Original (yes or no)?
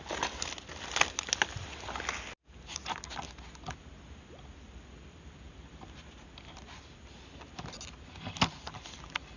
yes